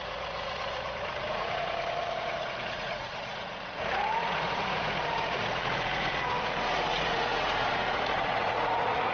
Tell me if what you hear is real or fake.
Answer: fake